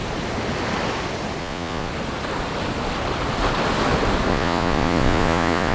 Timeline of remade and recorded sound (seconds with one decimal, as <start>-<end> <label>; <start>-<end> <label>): 0.0-1.4 recorded; 1.4-1.9 remade; 1.9-4.3 recorded; 4.3-5.7 remade